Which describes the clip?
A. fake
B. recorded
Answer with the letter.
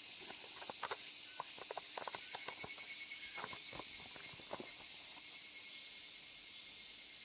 B